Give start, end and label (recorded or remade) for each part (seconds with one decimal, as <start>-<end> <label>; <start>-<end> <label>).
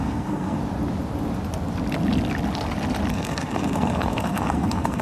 0.0-0.6 remade; 0.6-3.1 recorded; 3.1-5.0 remade